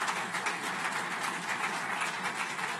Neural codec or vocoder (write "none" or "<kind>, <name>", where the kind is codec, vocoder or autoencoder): none